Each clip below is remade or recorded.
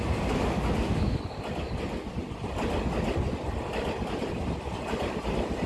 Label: recorded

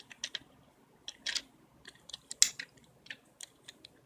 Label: recorded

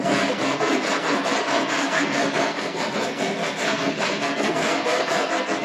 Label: remade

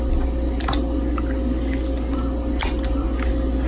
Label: recorded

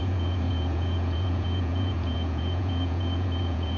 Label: remade